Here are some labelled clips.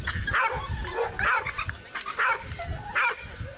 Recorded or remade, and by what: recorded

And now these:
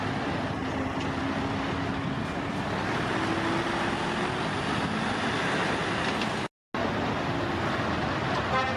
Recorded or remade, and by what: recorded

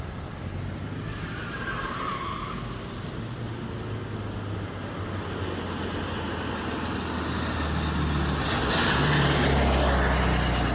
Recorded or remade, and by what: recorded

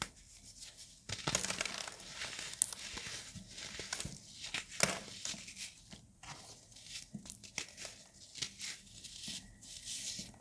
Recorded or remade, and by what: recorded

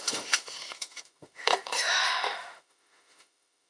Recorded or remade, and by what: remade, autoencoder, DAC-VAE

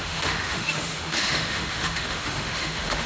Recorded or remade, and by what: remade, autoencoder, DAC-VAE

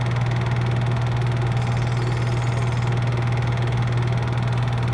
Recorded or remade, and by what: recorded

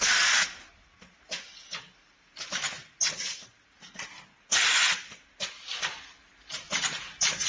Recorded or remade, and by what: recorded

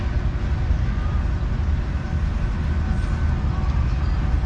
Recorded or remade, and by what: recorded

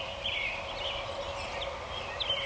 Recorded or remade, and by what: recorded